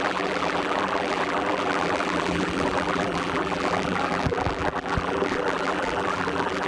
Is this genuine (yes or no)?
no